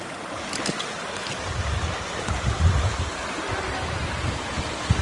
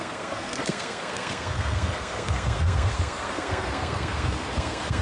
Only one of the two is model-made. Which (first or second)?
second